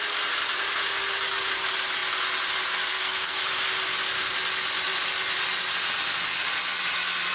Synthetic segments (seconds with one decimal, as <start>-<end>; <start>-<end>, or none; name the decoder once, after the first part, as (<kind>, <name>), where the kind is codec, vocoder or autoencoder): 2.9-3.4 (codec, SNAC)